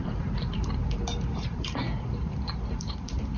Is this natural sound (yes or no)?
no